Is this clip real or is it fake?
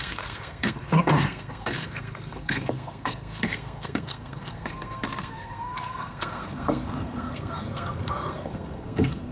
fake